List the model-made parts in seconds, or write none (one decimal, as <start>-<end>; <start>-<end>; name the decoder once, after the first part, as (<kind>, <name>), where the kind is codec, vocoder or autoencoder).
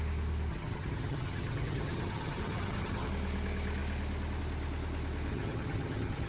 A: 0.5-3.1 (vocoder, HiFi-GAN); 5.3-6.3